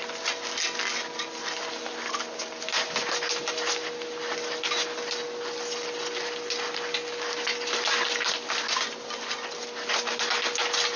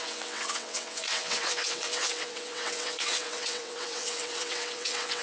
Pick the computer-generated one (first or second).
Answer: second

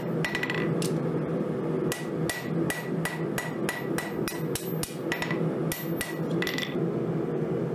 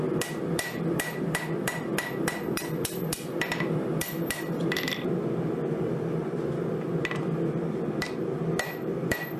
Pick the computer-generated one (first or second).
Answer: second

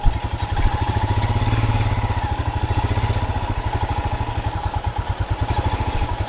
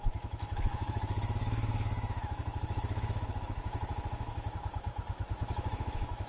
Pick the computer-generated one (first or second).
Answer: second